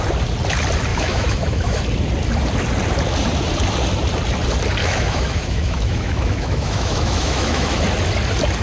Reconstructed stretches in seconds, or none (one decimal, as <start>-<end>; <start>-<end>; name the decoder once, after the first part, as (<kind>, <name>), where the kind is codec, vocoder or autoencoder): 0.9-1.8 (autoencoder, DAC-VAE); 4.8-7.8